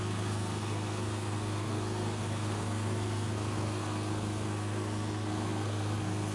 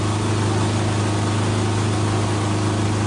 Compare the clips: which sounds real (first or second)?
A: second